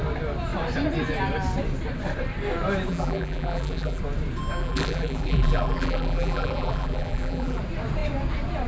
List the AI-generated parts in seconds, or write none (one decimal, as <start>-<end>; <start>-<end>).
2.9-4.0; 4.6-7.6